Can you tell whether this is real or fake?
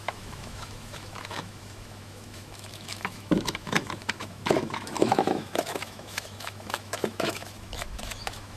fake